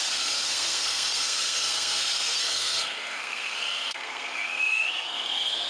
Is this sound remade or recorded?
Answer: remade